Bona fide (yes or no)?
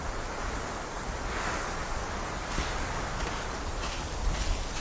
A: yes